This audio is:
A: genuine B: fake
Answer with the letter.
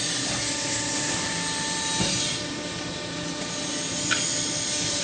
A